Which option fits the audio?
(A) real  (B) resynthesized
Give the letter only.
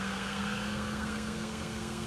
B